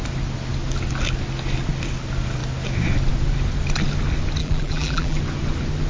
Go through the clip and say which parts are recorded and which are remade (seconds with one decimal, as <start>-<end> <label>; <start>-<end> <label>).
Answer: 0.0-4.4 recorded; 4.4-5.2 remade; 5.2-5.9 recorded